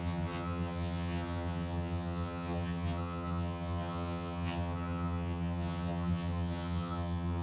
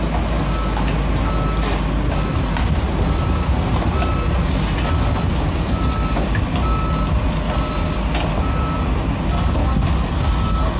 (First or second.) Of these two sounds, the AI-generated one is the first